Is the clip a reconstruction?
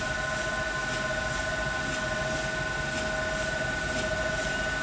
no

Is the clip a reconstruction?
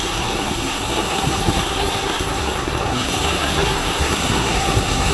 yes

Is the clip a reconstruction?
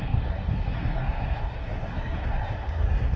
yes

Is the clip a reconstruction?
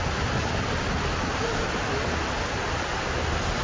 no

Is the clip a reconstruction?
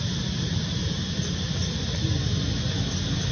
no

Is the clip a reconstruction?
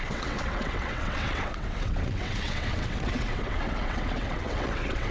yes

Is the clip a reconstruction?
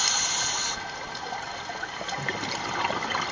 no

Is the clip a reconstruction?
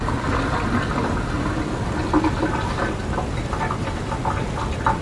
no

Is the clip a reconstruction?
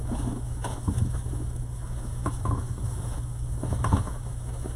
yes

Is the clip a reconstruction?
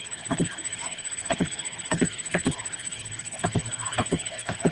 yes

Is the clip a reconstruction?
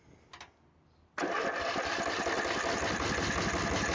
no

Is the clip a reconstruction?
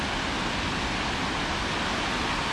no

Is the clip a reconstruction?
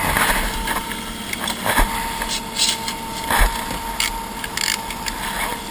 no